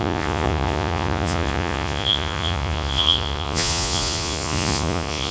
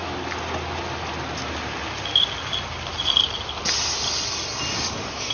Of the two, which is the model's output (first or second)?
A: first